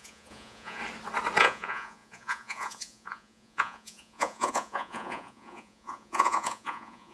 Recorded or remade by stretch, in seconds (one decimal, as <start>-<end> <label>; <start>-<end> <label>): 0.0-0.8 remade; 0.8-1.4 recorded; 1.4-7.1 remade